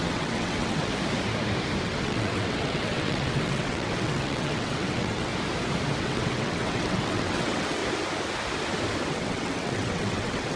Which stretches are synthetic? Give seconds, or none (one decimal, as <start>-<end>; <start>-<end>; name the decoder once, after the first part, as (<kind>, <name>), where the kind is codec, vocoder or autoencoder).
0.0-0.9 (vocoder, WaveNeXt); 1.8-5.3; 6.0-7.8; 9.1-10.6